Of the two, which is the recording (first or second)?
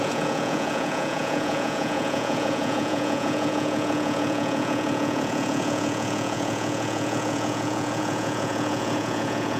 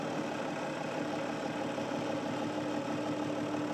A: second